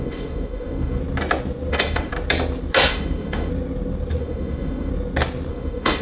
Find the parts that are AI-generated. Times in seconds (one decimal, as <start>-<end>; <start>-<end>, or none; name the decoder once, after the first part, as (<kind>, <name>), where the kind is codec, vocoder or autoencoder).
0.0-1.0 (autoencoder, DAC-VAE); 1.7-2.1; 2.9-3.5; 4.2-4.9; 5.5-6.0